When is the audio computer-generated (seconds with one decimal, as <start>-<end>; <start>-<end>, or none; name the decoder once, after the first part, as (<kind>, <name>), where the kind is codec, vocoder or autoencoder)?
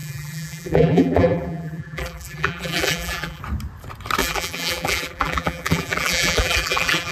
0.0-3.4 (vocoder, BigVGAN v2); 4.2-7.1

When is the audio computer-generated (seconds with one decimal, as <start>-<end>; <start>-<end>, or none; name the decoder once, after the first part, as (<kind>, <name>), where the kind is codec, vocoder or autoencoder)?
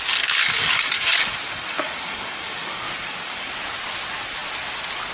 0.4-3.5 (codec, DAC)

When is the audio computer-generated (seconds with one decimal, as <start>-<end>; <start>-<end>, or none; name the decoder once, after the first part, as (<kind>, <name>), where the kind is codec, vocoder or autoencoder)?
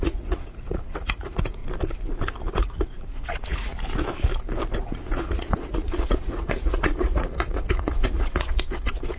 0.0-1.6 (vocoder, Vocos); 2.5-3.7; 4.8-9.2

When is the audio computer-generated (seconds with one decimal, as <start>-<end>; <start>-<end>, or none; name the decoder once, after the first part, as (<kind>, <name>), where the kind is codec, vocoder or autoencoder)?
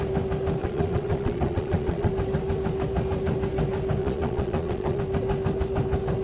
0.6-2.1 (vocoder, Vocos); 4.0-5.0